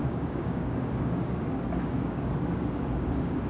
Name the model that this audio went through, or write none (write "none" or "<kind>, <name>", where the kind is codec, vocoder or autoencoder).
codec, DAC